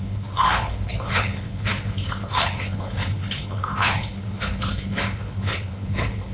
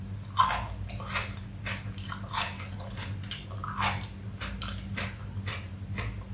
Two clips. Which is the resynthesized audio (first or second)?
first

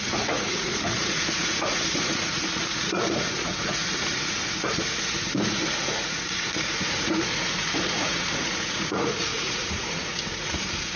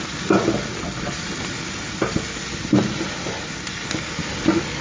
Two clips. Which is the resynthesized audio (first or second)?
first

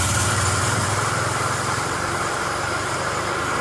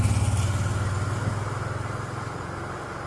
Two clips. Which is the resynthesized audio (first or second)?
first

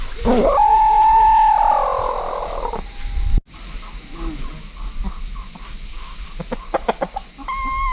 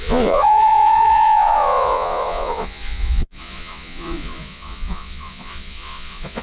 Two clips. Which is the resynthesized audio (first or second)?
second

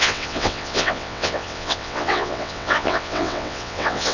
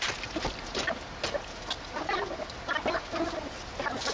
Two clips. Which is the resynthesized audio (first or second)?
first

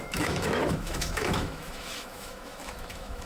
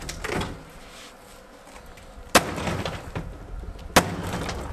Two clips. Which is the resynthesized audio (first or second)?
first